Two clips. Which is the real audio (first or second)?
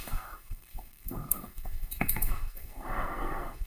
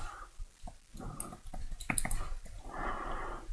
second